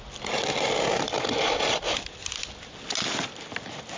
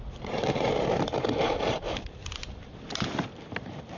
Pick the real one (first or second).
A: first